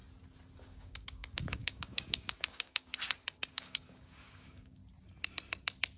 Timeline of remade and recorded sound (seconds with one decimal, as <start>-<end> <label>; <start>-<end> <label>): 0.0-0.6 recorded; 0.6-2.9 remade; 2.9-3.5 recorded; 3.5-4.8 remade; 4.8-6.0 recorded